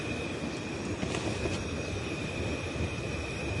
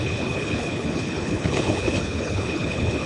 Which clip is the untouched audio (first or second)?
first